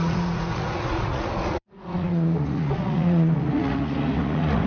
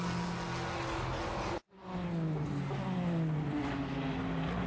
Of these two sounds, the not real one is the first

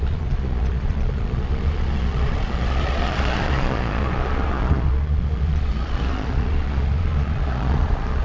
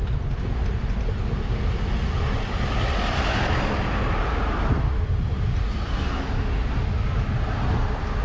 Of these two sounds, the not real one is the first